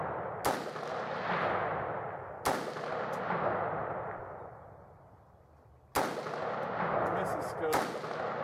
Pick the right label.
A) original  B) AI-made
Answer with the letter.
A